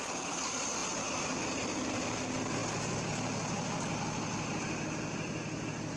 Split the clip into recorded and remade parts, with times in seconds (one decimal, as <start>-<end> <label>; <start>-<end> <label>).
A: 0.0-6.0 recorded